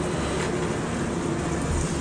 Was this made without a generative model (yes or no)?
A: yes